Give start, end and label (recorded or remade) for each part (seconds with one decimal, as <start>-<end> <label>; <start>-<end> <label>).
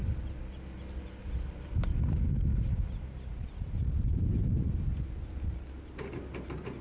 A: 0.0-6.8 recorded